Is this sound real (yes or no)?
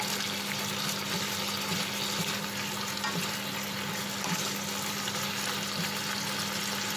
yes